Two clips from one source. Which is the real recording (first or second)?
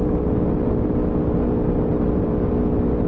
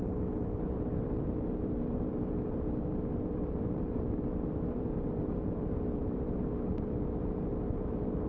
first